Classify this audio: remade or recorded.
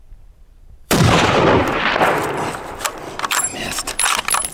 remade